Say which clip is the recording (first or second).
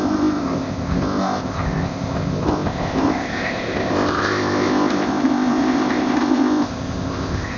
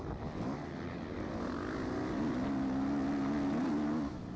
second